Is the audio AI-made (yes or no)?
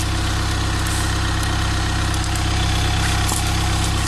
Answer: no